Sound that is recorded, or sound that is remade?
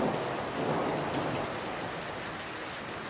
recorded